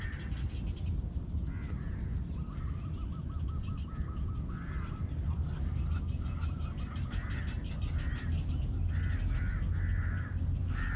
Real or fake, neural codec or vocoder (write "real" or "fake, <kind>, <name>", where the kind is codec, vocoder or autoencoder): real